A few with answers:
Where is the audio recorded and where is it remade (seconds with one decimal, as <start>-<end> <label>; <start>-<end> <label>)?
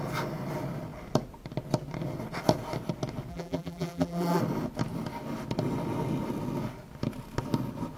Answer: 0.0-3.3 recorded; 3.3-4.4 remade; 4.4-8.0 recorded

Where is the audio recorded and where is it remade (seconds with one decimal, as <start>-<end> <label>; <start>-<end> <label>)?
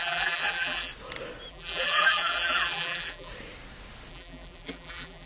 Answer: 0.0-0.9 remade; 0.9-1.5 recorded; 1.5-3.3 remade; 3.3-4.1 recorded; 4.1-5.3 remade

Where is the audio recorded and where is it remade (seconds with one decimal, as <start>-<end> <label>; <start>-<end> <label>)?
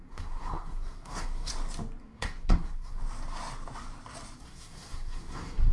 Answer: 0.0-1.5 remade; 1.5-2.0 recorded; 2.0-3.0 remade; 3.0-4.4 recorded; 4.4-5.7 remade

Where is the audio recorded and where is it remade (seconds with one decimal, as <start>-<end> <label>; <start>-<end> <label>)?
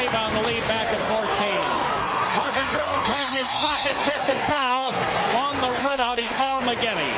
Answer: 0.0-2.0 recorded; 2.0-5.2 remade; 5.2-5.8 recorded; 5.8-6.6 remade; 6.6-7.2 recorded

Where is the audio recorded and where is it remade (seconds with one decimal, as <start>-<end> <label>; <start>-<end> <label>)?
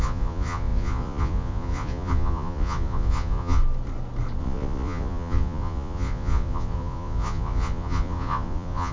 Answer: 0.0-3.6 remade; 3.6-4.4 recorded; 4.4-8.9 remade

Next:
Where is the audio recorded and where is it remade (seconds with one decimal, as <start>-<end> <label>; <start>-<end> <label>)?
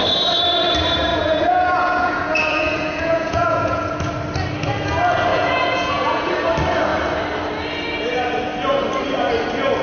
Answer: 0.0-1.1 recorded; 1.1-4.0 remade; 4.0-5.3 recorded; 5.3-6.3 remade; 6.3-9.8 recorded